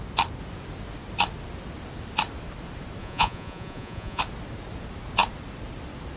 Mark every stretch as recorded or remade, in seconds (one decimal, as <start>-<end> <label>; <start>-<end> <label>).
0.0-3.0 recorded; 3.0-4.2 remade; 4.2-6.2 recorded